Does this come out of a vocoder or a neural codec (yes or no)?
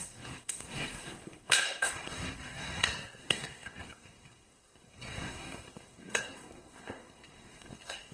yes